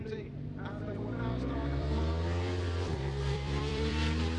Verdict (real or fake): fake